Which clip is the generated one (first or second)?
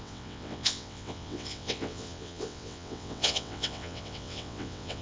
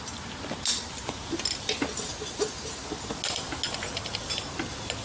first